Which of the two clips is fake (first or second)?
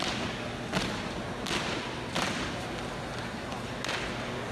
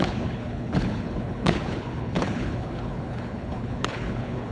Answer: second